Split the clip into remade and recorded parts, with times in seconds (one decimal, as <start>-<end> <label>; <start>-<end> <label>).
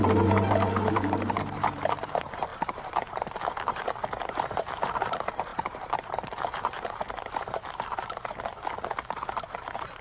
0.0-8.5 remade; 8.5-9.3 recorded; 9.3-10.0 remade